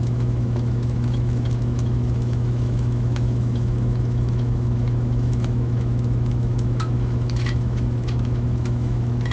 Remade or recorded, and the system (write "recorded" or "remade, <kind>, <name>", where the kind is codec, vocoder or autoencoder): remade, autoencoder, DAC-VAE